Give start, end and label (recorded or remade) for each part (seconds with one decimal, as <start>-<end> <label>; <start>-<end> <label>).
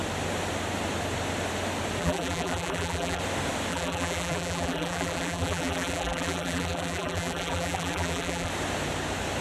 0.0-2.0 recorded; 2.0-3.2 remade; 3.2-3.7 recorded; 3.7-8.5 remade; 8.5-9.4 recorded